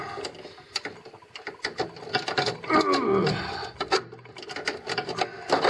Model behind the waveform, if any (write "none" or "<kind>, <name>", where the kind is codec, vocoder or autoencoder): none